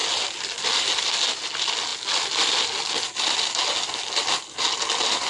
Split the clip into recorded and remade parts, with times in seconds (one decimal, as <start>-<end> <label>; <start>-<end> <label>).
0.0-5.3 recorded

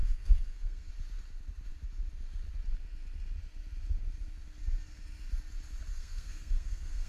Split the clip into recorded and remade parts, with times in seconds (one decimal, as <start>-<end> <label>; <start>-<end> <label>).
0.0-0.9 remade; 0.9-5.9 recorded; 5.9-7.1 remade

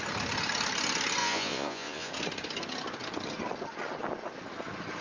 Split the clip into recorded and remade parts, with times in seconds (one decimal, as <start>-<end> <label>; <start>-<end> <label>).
0.0-1.2 recorded; 1.2-2.1 remade; 2.1-5.0 recorded